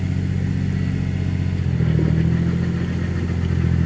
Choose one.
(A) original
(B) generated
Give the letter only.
A